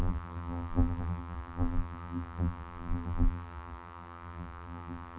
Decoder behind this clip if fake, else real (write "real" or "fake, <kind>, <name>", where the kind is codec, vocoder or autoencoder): fake, vocoder, BigVGAN v2